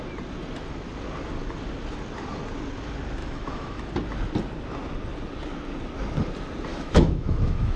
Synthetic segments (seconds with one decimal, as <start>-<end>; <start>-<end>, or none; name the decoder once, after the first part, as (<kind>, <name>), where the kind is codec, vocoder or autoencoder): 3.2-3.8 (autoencoder, DAC-VAE); 6.7-7.8